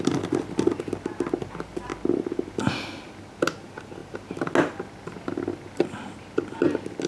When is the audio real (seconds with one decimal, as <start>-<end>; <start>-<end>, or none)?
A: 0.0-7.1